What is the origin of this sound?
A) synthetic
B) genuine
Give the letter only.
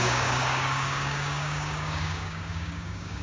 A